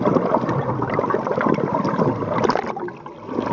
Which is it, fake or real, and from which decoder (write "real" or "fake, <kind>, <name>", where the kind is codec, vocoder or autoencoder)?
real